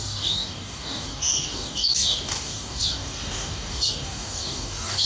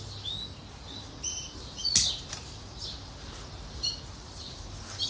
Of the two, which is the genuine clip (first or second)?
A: second